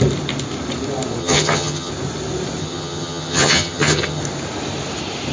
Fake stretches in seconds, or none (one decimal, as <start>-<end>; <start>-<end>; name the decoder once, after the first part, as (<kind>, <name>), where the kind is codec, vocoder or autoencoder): 1.2-1.9 (vocoder, HiFi-GAN); 2.6-4.2